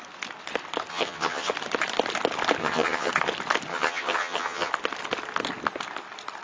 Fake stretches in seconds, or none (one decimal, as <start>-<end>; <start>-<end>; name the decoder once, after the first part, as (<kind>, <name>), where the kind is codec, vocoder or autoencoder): 0.9-1.5 (vocoder, HiFi-GAN); 2.6-3.1; 3.7-4.7